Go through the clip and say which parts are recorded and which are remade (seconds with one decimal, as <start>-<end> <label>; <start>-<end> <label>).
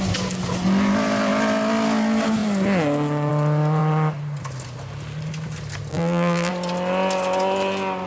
0.0-5.9 recorded; 5.9-6.5 remade; 6.5-8.1 recorded